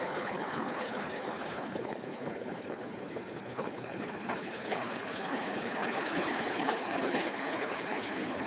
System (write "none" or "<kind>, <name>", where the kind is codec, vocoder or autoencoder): codec, HILCodec